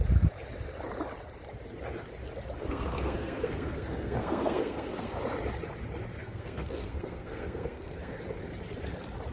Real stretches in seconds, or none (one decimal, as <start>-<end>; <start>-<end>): 0.0-2.6; 5.2-6.1; 8.2-9.3